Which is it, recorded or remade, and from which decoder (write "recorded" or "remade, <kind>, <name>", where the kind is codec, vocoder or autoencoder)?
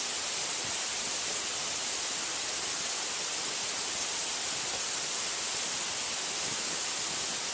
recorded